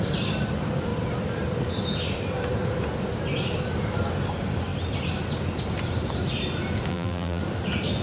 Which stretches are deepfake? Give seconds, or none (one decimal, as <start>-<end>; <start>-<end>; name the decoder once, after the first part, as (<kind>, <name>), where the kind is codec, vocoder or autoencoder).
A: 6.9-7.4 (vocoder, BigVGAN v2)